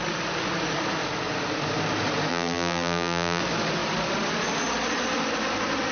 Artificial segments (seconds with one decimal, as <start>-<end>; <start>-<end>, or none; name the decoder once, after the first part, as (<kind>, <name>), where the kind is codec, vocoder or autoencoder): 2.3-3.4 (vocoder, BigVGAN v2)